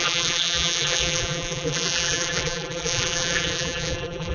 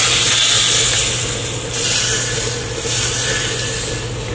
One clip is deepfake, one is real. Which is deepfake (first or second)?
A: first